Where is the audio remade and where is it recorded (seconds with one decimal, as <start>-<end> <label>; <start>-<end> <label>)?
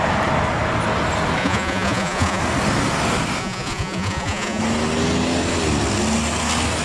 0.0-1.4 recorded; 1.4-2.4 remade; 2.4-3.4 recorded; 3.4-4.6 remade; 4.6-6.8 recorded